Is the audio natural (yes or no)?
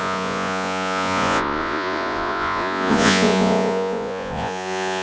no